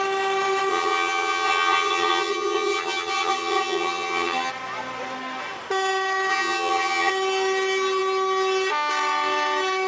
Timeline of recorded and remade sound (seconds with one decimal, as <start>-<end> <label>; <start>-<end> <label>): 0.0-0.7 recorded; 0.7-4.5 remade; 4.5-6.3 recorded; 6.3-7.1 remade; 7.1-9.9 recorded